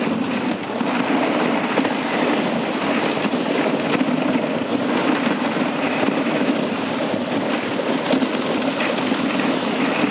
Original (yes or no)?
yes